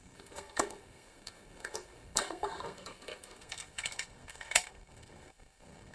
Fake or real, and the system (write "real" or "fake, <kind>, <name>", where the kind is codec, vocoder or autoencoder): fake, codec, SNAC